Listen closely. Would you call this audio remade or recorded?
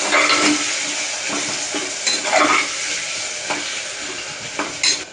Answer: recorded